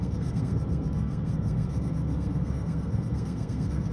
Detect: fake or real fake